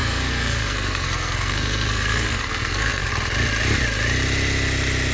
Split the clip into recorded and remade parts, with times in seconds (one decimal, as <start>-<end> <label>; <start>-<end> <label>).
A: 0.0-3.1 remade; 3.1-5.1 recorded